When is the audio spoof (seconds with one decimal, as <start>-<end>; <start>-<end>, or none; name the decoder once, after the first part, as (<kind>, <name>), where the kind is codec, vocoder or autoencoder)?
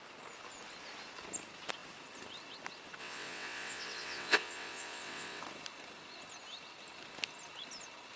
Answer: 3.0-5.4 (vocoder, WaveNeXt)